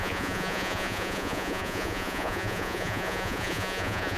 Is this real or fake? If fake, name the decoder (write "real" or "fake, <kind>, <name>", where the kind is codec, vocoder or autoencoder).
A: fake, vocoder, Vocos